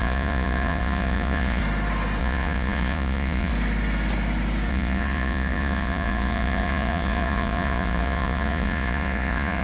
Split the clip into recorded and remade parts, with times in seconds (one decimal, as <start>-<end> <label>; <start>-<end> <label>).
0.0-1.6 remade; 1.6-2.2 recorded; 2.2-3.5 remade; 3.5-4.7 recorded; 4.7-9.6 remade